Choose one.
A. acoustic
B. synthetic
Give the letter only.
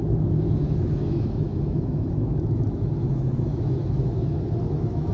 B